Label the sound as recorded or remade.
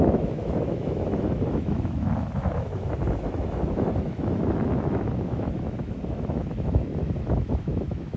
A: remade